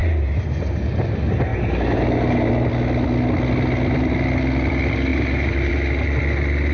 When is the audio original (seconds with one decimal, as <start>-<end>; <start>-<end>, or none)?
1.0-1.5; 2.5-5.1; 5.7-6.7